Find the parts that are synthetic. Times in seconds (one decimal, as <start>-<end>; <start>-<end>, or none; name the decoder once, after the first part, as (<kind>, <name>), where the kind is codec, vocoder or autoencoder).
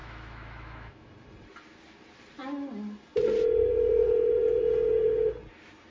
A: 0.0-1.1 (autoencoder, DAC-VAE)